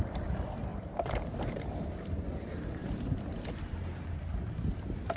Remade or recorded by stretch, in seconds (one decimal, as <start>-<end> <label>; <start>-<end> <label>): 0.0-0.7 recorded; 0.7-2.2 remade; 2.2-2.8 recorded; 2.8-5.2 remade